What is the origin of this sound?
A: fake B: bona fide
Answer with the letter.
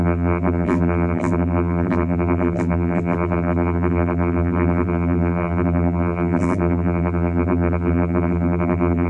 A